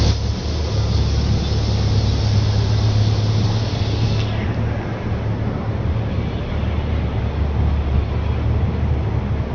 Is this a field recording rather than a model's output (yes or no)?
yes